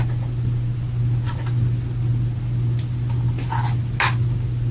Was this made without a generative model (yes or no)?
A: yes